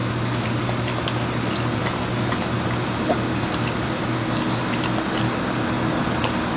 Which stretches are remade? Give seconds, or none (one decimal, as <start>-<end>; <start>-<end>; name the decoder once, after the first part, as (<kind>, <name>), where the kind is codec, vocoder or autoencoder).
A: none